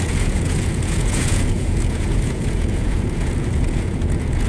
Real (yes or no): no